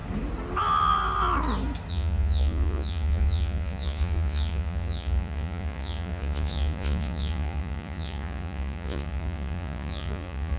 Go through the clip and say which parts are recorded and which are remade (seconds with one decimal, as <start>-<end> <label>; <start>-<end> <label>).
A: 0.0-1.9 recorded; 1.9-10.6 remade